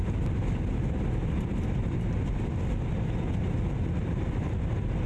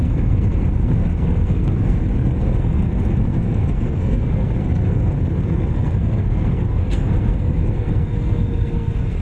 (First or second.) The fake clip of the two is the second